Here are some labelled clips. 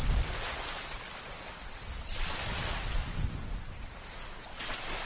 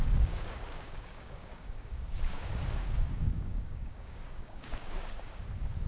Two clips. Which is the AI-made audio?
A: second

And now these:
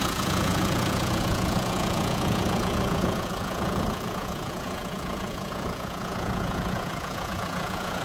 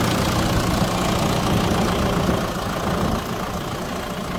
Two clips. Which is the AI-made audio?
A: first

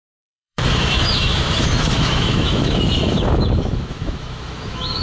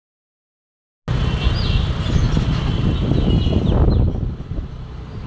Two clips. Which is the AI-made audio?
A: first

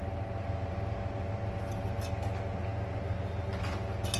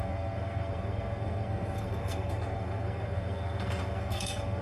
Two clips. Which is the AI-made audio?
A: second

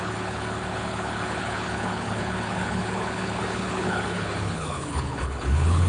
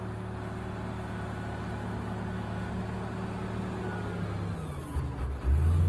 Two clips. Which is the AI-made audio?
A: first